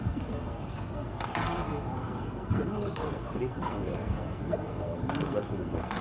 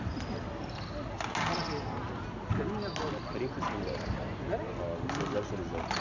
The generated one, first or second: first